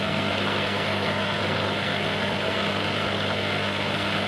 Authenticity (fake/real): fake